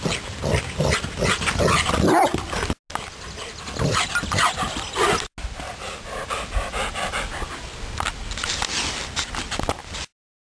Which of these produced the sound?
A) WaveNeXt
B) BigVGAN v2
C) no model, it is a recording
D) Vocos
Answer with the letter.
C